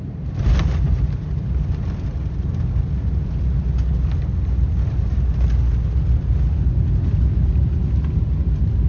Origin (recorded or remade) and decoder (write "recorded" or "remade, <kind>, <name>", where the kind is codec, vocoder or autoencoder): recorded